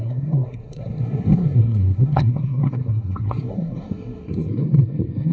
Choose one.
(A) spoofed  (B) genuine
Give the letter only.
A